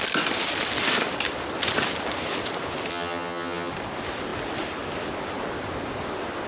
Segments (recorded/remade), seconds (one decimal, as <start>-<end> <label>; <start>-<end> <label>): 0.0-2.9 recorded; 2.9-3.7 remade; 3.7-6.5 recorded